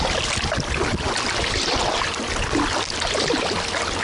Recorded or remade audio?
recorded